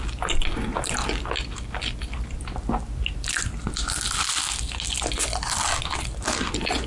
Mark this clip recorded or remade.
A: recorded